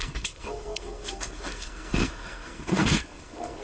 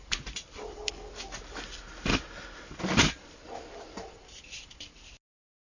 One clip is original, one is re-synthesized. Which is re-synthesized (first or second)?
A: first